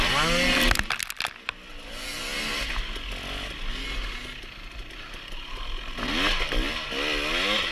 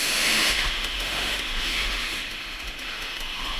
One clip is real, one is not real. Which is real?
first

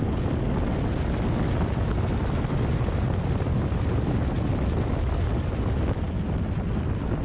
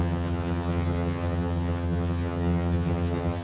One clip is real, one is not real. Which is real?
first